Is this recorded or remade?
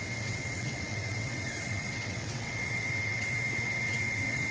remade